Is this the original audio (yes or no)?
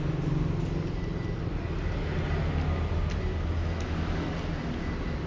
yes